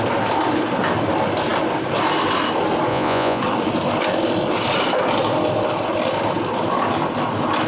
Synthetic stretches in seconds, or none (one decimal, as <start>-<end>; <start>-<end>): 2.9-3.4